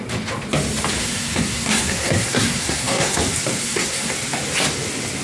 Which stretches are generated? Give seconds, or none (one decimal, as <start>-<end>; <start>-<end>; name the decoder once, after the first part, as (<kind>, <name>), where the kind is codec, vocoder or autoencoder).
1.0-3.2 (codec, SNAC); 3.6-4.1

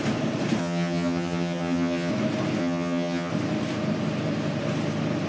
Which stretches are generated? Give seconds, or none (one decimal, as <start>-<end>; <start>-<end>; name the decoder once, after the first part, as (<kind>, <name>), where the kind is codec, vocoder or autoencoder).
0.6-2.1 (vocoder, HiFi-GAN); 2.6-3.3

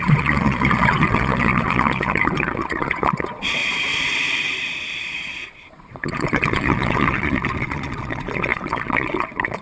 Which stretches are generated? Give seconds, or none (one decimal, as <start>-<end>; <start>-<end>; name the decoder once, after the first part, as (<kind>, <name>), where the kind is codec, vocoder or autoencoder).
0.0-3.6 (vocoder, Vocos); 5.0-9.6

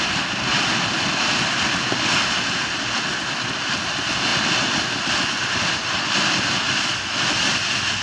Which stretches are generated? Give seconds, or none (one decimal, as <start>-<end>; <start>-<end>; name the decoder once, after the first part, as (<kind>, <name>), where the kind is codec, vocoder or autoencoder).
none

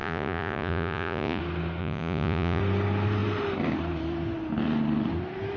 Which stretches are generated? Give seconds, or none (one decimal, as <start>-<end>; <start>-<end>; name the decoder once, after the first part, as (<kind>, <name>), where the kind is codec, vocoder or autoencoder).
0.0-1.4 (vocoder, Vocos); 1.8-2.6

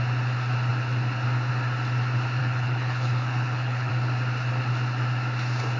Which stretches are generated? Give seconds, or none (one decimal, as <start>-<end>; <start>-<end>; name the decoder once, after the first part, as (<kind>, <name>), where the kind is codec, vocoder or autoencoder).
2.4-3.9 (codec, HILCodec)

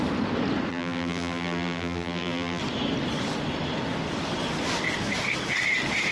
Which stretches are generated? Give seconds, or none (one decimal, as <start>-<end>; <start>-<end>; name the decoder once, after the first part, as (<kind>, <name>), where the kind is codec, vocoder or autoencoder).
0.7-2.6 (vocoder, BigVGAN v2)

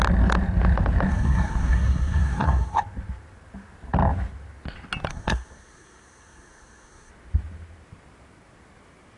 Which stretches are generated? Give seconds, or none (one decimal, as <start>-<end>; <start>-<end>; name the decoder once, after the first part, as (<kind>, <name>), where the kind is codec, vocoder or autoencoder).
1.1-2.8 (codec, SNAC); 5.1-7.1